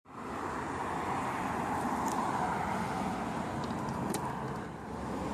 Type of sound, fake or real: real